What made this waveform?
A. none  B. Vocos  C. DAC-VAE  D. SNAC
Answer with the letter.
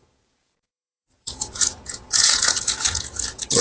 B